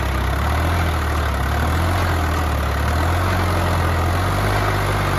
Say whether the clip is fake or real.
real